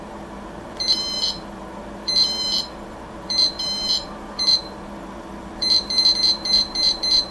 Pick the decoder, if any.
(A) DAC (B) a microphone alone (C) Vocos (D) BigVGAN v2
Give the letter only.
D